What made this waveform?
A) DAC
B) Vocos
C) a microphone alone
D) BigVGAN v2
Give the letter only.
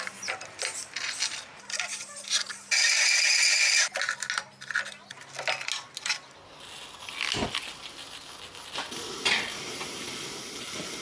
C